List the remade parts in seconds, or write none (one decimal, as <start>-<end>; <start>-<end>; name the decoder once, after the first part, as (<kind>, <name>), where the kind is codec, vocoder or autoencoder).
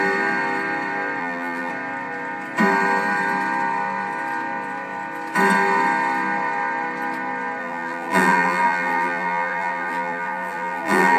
1.2-1.7 (vocoder, BigVGAN v2); 7.6-11.2